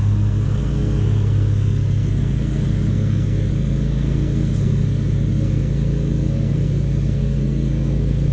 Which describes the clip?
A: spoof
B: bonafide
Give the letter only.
A